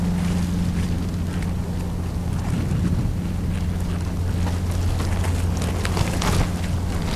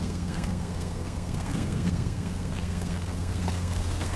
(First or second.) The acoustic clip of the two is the first